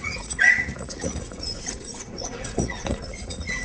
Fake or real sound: fake